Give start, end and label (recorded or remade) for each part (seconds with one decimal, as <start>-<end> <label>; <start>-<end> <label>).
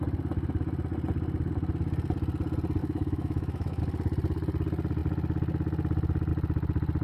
0.0-2.8 recorded; 2.8-3.8 remade; 3.8-7.0 recorded